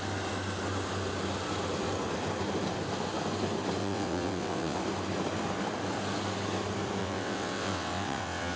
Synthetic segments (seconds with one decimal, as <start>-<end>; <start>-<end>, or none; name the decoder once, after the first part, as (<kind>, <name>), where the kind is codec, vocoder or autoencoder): 3.8-4.8 (vocoder, WaveNeXt); 7.0-8.6